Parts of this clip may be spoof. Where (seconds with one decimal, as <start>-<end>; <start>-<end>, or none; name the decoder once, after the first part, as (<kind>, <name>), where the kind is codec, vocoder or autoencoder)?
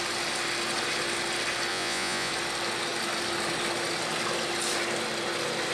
1.7-2.3 (vocoder, Vocos)